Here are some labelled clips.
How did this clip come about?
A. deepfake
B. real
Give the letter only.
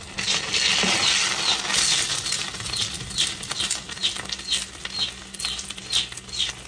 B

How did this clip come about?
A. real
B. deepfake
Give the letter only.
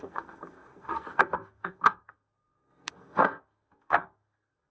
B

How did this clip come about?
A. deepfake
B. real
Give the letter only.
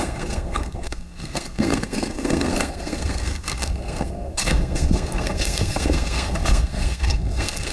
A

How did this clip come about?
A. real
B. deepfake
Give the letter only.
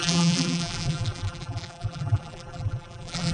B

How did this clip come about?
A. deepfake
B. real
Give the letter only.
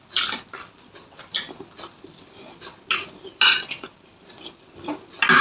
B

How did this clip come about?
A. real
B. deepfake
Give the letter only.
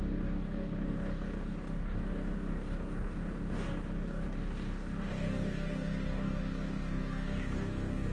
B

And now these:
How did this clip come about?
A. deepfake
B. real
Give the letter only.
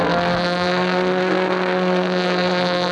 A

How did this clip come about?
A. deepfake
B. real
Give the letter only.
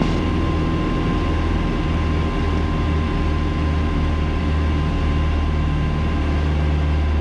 B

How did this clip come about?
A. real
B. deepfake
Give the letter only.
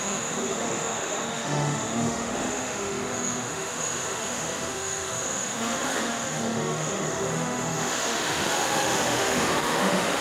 B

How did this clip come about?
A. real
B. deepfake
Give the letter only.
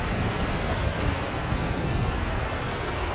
B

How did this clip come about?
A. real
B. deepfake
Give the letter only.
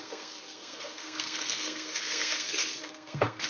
B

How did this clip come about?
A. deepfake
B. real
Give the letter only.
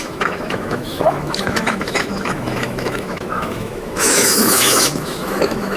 A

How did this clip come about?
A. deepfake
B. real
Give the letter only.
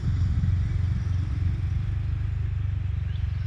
B